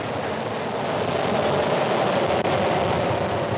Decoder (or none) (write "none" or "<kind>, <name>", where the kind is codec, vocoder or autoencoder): none